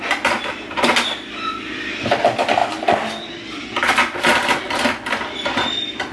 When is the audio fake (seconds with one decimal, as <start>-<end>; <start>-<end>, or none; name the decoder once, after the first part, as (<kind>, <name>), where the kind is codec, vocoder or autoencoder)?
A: none